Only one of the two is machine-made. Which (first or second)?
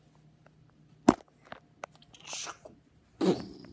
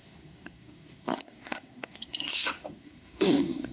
second